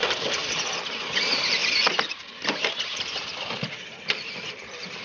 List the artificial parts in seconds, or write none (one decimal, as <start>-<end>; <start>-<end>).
0.0-0.4; 1.1-1.6; 4.2-5.0